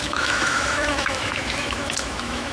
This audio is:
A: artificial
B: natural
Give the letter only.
A